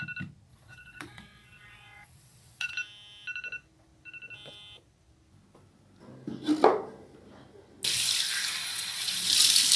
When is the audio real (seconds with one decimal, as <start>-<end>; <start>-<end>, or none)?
0.0-0.5; 2.7-8.7; 9.3-9.8